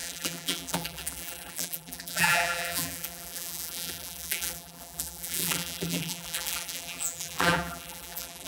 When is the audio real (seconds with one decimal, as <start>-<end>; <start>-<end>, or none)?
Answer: none